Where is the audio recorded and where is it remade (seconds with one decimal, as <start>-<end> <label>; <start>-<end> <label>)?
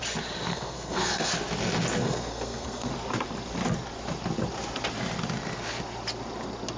0.0-0.5 recorded; 0.5-1.3 remade; 1.3-2.0 recorded; 2.0-2.9 remade; 2.9-6.8 recorded